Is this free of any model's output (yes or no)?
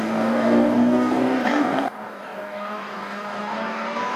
no